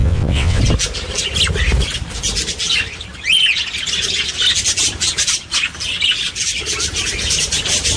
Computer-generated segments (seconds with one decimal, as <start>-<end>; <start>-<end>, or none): 0.0-0.6